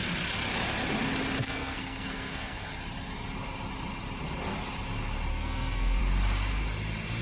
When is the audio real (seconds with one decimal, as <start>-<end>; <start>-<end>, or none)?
0.0-1.4; 2.7-5.3; 6.0-7.2